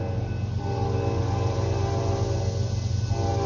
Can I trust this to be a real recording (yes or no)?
yes